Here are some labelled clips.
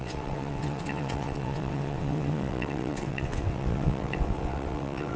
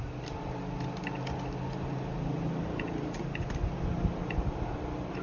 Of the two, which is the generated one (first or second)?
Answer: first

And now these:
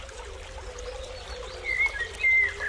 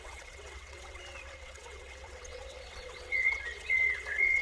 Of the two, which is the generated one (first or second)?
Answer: second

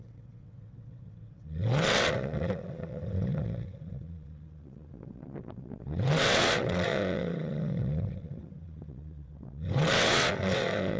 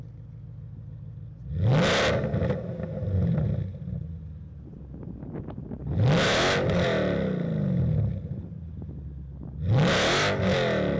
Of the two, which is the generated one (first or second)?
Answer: first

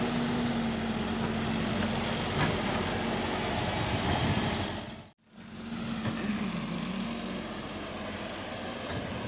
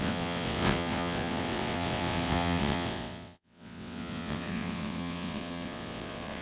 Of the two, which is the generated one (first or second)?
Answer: second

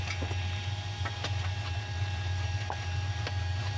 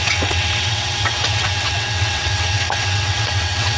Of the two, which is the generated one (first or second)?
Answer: second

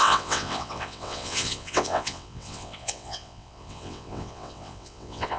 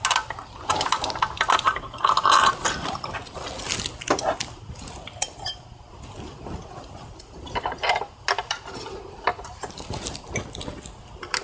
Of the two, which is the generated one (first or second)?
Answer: first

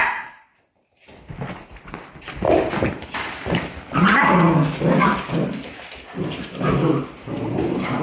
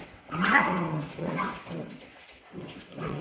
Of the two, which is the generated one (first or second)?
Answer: second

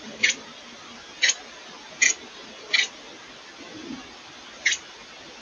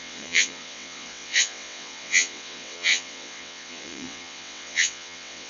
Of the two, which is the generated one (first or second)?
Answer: second